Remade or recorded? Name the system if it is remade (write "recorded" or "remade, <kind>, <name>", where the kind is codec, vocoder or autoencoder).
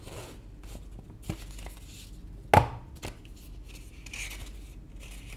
recorded